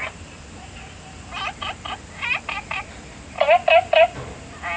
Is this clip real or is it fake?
real